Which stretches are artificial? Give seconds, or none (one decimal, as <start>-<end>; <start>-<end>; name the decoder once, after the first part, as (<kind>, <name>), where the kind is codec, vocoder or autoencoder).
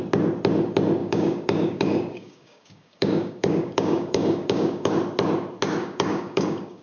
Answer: 1.0-4.9 (codec, DAC); 5.8-6.8